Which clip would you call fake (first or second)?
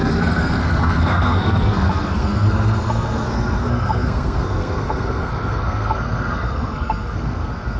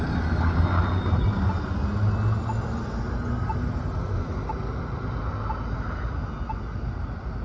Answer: first